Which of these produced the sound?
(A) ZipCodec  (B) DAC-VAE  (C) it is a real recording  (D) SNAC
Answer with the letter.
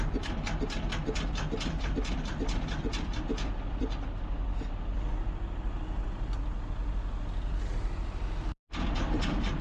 C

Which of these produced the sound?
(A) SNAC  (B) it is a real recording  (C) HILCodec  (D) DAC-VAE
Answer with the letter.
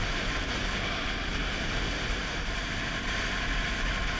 B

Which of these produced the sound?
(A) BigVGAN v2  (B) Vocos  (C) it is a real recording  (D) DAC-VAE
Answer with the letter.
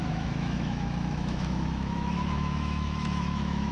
D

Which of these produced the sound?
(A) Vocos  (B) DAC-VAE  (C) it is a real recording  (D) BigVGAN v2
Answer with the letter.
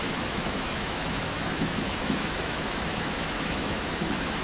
B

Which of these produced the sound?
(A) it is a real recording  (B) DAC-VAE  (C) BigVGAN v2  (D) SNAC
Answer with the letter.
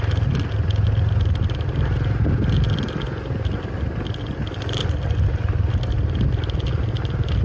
A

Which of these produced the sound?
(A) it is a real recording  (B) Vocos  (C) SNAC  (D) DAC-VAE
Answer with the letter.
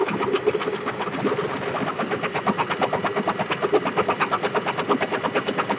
A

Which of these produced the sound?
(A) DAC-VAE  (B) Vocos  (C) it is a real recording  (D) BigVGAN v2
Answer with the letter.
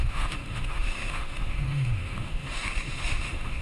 A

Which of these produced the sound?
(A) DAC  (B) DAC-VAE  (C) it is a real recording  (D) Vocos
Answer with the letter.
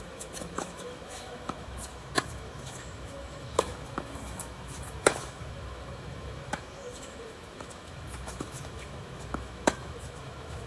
B